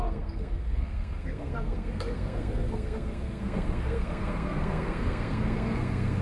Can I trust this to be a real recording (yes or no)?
no